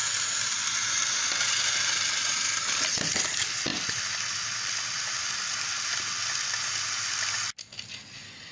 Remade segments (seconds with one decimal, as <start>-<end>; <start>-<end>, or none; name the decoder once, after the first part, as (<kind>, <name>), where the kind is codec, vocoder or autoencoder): 0.0-2.8 (vocoder, BigVGAN v2)